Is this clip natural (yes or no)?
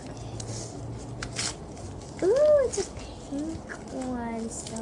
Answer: yes